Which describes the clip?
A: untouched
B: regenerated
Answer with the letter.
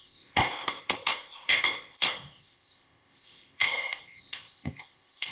B